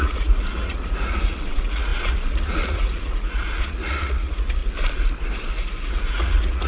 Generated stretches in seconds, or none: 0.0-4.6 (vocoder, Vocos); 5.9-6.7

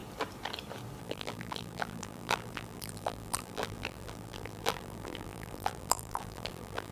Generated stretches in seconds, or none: 1.0-6.9 (vocoder, BigVGAN v2)

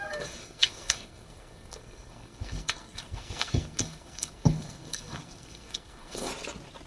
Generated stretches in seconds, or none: 0.0-6.3 (codec, SNAC)

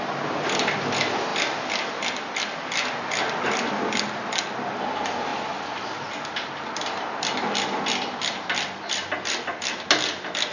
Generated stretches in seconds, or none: none

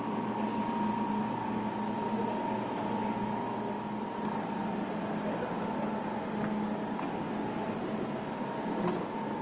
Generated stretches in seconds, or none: none